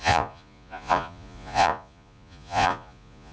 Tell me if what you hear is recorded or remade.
remade